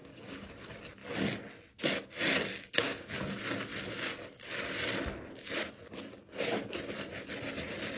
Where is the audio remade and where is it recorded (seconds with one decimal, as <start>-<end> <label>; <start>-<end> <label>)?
0.0-0.5 remade; 0.5-2.5 recorded; 2.5-3.1 remade; 3.1-8.0 recorded